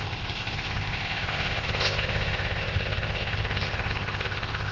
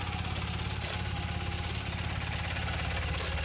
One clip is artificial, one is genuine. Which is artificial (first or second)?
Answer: first